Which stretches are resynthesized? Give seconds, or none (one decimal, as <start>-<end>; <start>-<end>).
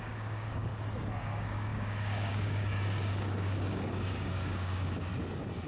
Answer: 0.0-0.7; 1.2-5.1